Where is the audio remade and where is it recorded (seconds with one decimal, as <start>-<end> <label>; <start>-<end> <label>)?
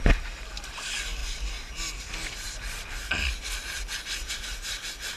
0.0-5.2 recorded